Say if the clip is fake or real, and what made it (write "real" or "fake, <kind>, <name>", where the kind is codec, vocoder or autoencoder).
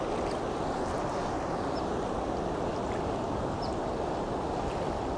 real